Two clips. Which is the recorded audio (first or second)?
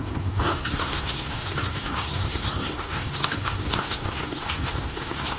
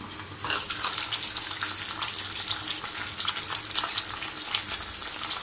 second